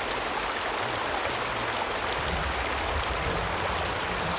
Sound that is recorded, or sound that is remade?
recorded